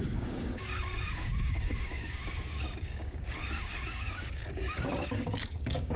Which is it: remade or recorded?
remade